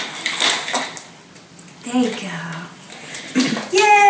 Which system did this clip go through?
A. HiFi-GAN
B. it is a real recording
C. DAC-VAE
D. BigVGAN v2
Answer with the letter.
B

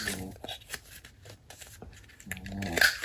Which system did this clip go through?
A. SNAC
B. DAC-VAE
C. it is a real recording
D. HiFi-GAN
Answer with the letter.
C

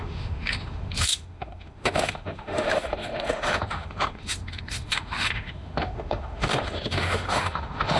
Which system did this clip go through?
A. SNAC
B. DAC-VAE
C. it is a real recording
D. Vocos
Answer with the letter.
B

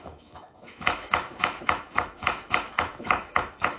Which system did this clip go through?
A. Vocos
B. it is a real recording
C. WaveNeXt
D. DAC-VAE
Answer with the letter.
D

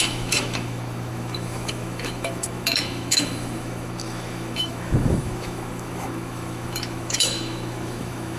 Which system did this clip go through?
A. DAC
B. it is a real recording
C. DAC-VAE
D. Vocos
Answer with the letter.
C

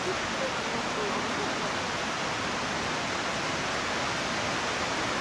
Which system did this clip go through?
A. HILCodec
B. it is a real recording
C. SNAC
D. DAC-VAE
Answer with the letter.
B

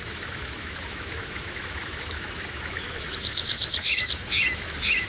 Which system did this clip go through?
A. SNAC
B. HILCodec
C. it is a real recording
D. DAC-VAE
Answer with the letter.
D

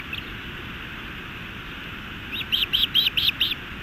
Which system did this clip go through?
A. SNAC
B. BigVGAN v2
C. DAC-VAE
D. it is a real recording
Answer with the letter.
D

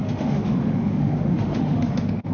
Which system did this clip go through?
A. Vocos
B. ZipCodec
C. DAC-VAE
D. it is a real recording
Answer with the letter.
C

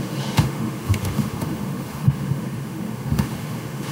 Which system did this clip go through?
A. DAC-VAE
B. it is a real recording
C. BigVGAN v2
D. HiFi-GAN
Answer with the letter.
A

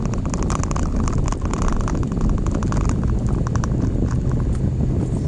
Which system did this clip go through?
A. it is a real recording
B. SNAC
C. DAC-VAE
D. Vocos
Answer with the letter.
A